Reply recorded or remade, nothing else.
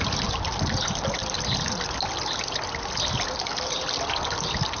recorded